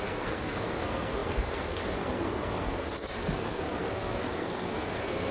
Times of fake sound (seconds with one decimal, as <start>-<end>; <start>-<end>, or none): 0.0-5.3

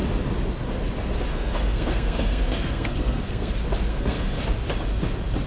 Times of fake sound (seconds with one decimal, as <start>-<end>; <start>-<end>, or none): 1.3-3.5; 3.9-4.4

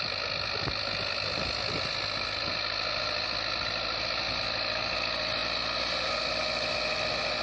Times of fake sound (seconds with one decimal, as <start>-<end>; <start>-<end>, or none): none

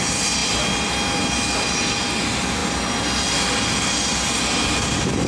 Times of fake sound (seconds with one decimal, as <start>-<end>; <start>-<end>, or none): none

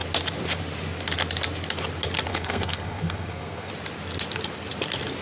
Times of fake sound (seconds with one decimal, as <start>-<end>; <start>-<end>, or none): 2.3-3.7